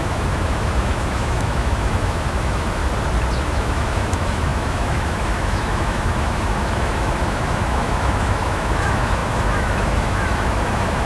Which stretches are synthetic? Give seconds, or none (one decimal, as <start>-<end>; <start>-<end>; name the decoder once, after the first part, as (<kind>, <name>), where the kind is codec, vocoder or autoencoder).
0.0-2.8 (autoencoder, DAC-VAE); 3.4-11.1